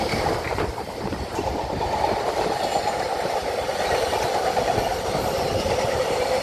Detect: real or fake fake